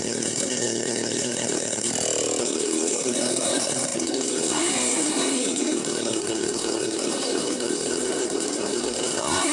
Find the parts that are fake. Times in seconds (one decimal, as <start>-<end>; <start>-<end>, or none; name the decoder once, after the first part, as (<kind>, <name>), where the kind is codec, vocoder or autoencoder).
0.0-1.9 (codec, SNAC); 2.4-9.5